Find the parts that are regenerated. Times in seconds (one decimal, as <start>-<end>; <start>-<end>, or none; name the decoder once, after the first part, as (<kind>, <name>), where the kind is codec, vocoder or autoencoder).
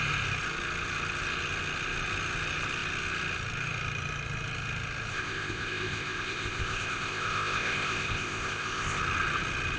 5.1-9.0 (codec, ZipCodec)